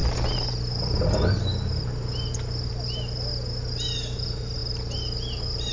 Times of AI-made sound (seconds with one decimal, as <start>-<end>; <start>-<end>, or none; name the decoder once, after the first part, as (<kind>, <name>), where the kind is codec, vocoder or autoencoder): none